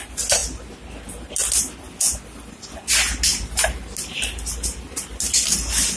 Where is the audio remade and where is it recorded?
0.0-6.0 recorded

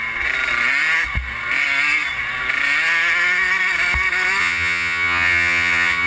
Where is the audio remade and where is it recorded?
0.0-4.4 recorded; 4.4-6.1 remade

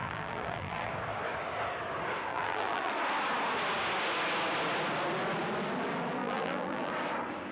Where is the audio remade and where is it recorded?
0.0-0.9 remade; 0.9-2.3 recorded; 2.3-2.9 remade; 2.9-6.2 recorded; 6.2-6.9 remade; 6.9-7.5 recorded

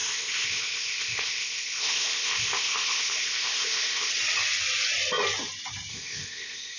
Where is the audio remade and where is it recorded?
0.0-4.1 remade; 4.1-5.9 recorded; 5.9-6.8 remade